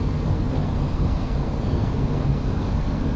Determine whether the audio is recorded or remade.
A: remade